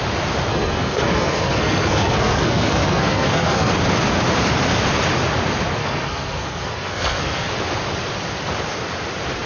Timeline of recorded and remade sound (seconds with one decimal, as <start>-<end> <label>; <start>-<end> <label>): 0.0-0.5 recorded; 0.5-3.7 remade; 3.7-5.8 recorded; 5.8-7.5 remade; 7.5-9.5 recorded